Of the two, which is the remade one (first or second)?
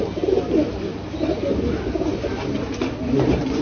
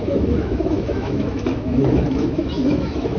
second